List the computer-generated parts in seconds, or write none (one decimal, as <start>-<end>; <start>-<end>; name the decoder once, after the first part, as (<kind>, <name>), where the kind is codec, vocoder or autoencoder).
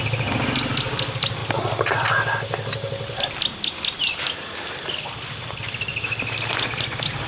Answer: 0.0-1.4 (vocoder, BigVGAN v2); 4.0-5.9; 6.7-7.3